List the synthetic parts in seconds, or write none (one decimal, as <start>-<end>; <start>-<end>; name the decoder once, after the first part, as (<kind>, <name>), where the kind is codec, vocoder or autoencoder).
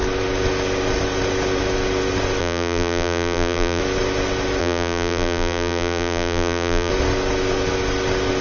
2.4-3.8 (vocoder, BigVGAN v2); 4.6-6.9